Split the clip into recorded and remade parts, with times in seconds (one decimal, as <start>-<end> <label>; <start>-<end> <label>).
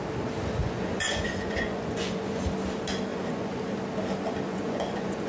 0.0-0.6 recorded; 0.6-2.4 remade; 2.4-3.1 recorded; 3.1-3.6 remade; 3.6-4.5 recorded; 4.5-5.3 remade